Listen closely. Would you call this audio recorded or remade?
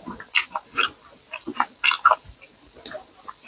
recorded